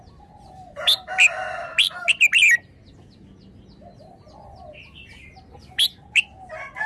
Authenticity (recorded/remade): recorded